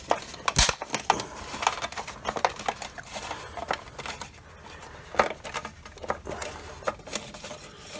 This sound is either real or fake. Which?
real